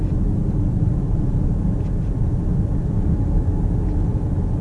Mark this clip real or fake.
real